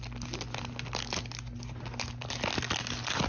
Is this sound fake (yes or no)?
no